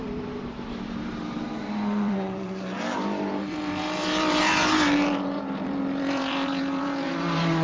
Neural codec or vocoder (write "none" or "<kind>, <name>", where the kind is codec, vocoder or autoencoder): vocoder, BigVGAN v2